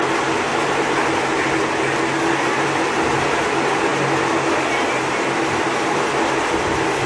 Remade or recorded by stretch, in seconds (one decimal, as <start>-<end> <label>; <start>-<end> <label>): 0.0-7.1 recorded